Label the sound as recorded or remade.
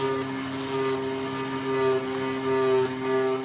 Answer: recorded